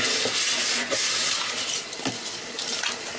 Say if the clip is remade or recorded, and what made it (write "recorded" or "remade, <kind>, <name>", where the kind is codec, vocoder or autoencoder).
recorded